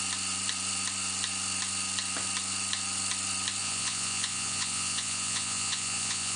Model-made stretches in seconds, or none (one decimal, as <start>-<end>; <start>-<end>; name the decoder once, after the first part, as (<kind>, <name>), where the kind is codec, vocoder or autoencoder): 3.6-6.4 (vocoder, Vocos)